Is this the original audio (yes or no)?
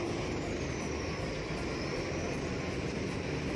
no